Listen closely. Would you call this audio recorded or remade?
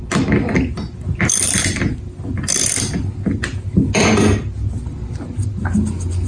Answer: recorded